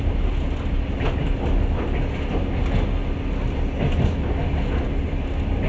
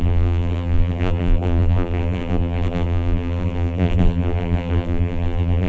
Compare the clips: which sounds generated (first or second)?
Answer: second